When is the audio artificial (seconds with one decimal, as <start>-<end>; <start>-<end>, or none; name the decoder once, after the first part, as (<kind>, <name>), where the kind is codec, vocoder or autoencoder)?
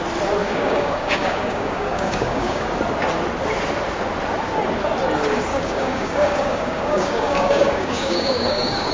0.4-2.7 (codec, DAC); 5.5-8.9